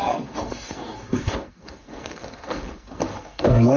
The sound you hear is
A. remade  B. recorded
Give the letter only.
A